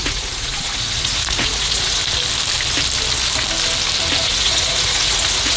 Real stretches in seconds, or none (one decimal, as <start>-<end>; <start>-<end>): 2.0-4.2